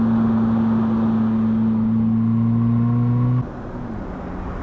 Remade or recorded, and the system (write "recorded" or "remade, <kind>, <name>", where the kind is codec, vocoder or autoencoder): recorded